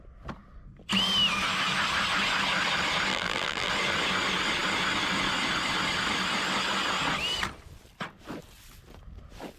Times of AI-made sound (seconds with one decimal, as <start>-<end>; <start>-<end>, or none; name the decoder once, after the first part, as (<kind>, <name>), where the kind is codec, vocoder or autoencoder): 3.1-3.7 (vocoder, BigVGAN v2)